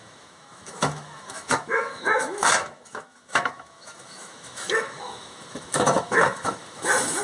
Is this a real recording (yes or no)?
no